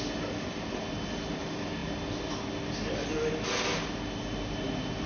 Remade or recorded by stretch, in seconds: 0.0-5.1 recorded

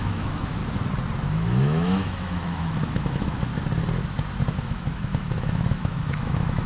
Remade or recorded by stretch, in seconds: 0.0-0.6 remade; 0.6-1.3 recorded; 1.3-3.5 remade; 3.5-4.6 recorded; 4.6-6.7 remade

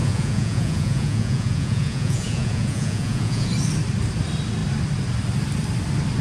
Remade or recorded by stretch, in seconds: 0.0-3.5 remade; 3.5-6.2 recorded

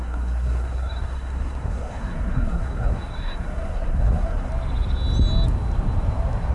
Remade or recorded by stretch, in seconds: 0.0-4.5 remade; 4.5-6.5 recorded

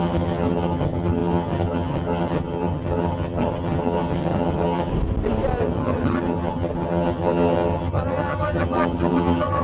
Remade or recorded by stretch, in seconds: 0.0-4.9 remade; 4.9-5.6 recorded; 5.6-9.6 remade

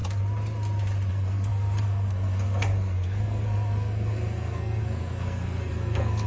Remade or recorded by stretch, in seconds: 0.0-1.1 recorded; 1.1-6.3 remade